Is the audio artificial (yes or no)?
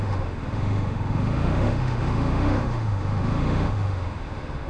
yes